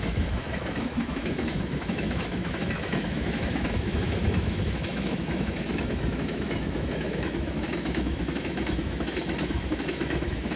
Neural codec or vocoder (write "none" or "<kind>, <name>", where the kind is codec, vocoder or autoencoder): autoencoder, DAC-VAE